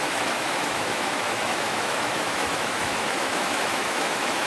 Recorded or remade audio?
remade